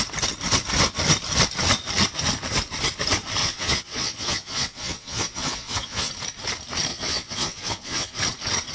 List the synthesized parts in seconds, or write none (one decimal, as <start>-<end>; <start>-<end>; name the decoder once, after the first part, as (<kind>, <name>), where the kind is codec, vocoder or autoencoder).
3.4-6.1 (vocoder, Vocos); 6.9-8.2